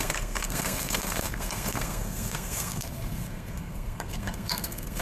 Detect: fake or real fake